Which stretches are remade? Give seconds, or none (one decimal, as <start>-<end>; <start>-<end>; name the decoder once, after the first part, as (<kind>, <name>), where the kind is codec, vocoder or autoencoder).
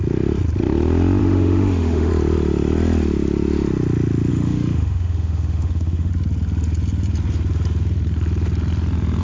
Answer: 1.2-2.1 (autoencoder, DAC-VAE); 4.3-6.1